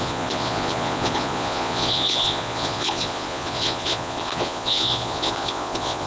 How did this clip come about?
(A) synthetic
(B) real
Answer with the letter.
A